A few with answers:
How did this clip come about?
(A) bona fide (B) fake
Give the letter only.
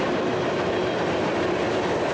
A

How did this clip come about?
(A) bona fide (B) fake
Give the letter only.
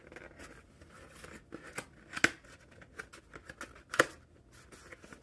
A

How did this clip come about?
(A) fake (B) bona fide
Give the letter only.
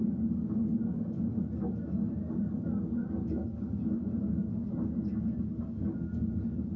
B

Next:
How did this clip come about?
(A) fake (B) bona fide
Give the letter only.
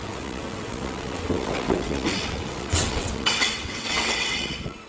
A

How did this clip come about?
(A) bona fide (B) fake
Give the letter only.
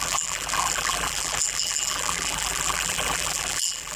B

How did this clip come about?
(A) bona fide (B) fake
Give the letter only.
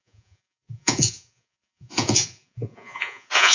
B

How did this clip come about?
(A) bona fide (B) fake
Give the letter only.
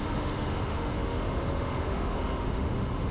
B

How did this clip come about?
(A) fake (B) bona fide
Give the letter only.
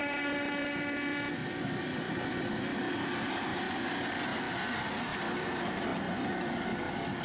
B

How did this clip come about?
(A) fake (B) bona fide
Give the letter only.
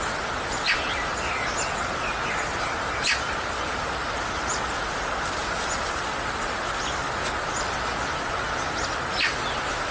B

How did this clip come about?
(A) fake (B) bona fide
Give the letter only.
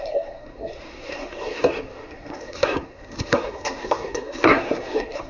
A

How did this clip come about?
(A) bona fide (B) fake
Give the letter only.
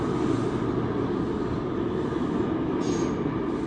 A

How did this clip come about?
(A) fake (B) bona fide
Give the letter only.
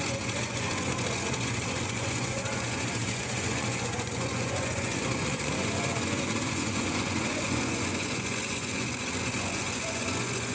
A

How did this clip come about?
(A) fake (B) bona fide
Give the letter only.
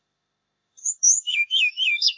A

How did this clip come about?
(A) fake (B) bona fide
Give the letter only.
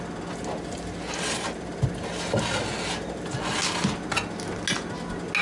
B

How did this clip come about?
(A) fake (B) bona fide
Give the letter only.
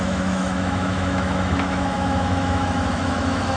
A